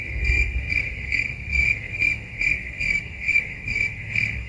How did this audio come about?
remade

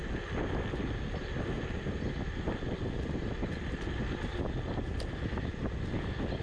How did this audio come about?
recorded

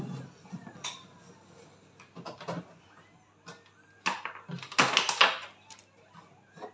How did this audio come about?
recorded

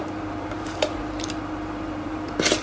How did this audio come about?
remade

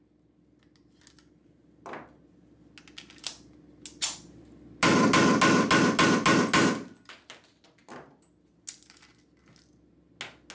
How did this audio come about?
recorded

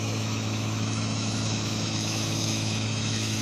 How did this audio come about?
remade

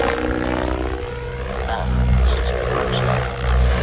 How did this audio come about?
recorded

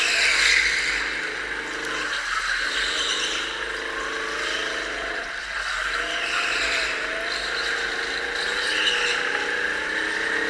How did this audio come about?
recorded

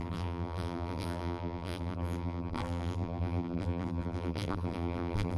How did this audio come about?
remade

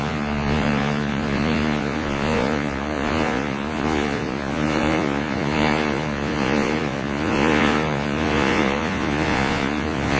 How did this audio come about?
remade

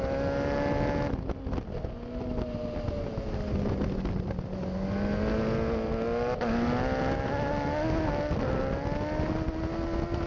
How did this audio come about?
recorded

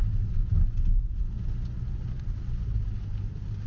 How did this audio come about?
recorded